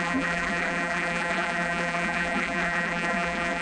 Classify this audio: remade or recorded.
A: remade